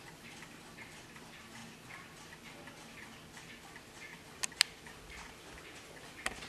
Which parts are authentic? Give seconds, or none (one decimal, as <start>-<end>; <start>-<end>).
0.0-6.5